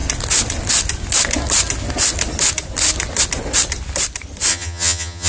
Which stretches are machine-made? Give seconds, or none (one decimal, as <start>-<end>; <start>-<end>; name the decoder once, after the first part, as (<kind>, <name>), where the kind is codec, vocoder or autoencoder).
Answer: 4.5-5.3 (vocoder, HiFi-GAN)